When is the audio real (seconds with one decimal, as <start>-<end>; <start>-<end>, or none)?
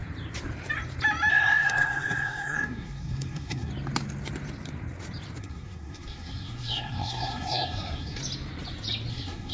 0.0-1.3; 3.7-5.4; 8.2-9.1